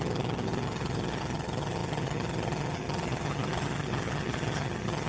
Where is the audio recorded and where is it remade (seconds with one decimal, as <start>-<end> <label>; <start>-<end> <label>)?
0.0-5.1 remade